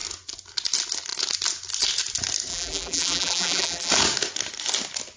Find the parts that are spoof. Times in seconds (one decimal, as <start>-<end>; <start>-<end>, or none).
2.5-3.9